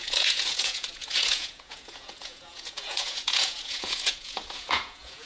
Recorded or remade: remade